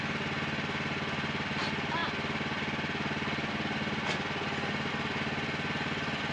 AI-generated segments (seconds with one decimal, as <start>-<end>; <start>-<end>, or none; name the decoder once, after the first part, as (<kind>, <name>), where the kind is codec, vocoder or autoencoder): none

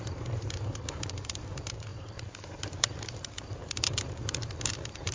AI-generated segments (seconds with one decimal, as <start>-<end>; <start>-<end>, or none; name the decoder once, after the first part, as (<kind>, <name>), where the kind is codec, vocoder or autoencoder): 0.0-5.1 (vocoder, BigVGAN v2)

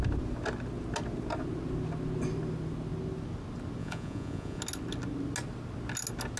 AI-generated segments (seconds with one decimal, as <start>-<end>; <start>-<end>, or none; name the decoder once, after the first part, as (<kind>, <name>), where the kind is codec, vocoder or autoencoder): 3.8-4.6 (vocoder, Vocos)

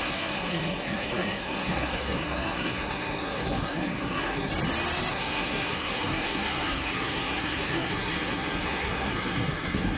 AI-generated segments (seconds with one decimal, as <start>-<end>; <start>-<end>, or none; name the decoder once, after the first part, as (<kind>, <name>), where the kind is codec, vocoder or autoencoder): 0.0-4.5 (codec, SNAC); 5.1-10.0

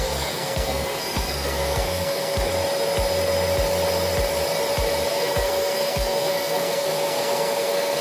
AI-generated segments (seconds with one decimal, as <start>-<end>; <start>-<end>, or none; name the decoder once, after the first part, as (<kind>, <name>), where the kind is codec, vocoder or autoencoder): 0.0-2.5 (codec, SNAC); 5.1-8.0

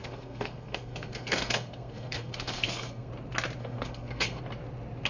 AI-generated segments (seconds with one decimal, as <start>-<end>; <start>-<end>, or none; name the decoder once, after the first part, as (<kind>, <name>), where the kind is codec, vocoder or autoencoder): 0.0-3.1 (codec, SNAC); 3.6-4.4

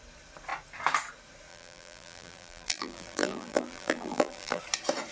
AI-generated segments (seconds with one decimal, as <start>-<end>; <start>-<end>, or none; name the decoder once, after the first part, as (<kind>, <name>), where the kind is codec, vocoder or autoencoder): 1.5-4.6 (vocoder, BigVGAN v2)

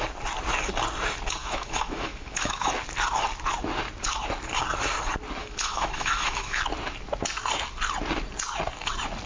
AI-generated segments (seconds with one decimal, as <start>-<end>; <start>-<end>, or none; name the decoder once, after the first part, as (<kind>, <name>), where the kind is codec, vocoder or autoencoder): 1.4-2.7 (autoencoder, DAC-VAE); 5.4-6.6